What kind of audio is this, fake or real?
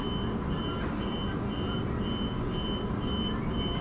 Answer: real